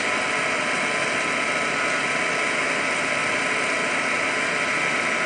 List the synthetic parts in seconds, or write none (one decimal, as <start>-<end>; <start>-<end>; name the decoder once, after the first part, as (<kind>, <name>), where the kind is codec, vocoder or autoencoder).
none